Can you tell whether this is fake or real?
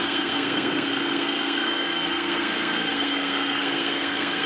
fake